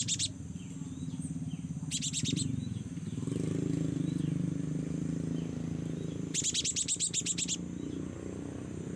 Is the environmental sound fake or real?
real